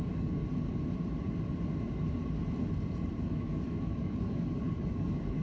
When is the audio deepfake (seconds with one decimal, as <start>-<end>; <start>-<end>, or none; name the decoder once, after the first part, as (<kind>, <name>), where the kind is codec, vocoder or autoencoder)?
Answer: 0.0-0.4 (codec, DAC); 3.2-5.4